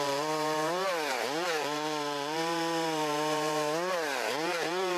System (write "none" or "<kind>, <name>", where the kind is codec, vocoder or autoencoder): vocoder, BigVGAN v2